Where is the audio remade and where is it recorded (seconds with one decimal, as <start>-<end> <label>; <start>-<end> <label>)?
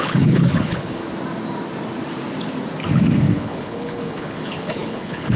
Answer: 0.0-1.0 remade; 1.0-3.2 recorded; 3.2-5.4 remade